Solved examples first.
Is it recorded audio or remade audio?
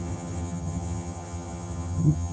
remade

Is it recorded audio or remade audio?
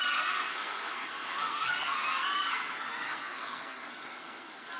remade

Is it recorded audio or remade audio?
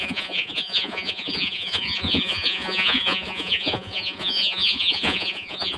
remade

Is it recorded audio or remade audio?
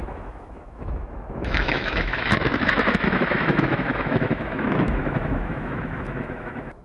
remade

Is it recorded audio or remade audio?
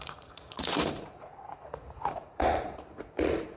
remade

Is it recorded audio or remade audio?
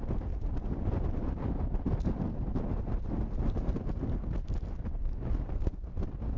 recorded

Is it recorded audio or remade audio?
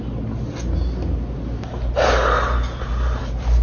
recorded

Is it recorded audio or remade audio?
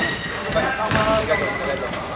recorded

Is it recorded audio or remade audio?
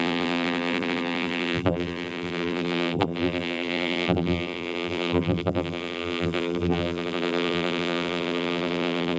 remade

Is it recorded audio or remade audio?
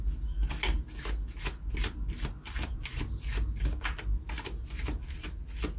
recorded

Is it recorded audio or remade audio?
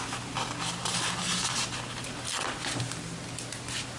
recorded